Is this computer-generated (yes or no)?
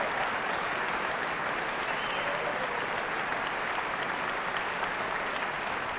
no